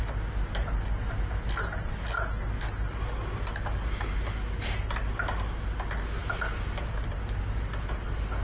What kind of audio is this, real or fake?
real